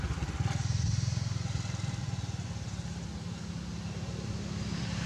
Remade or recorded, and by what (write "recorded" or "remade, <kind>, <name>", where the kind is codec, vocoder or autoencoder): recorded